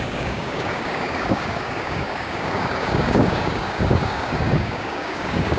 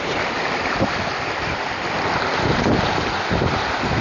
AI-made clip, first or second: first